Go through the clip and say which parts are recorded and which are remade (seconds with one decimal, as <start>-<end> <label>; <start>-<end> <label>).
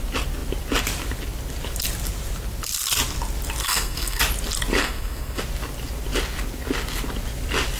0.0-3.6 recorded; 3.6-4.2 remade; 4.2-4.8 recorded; 4.8-5.4 remade; 5.4-7.8 recorded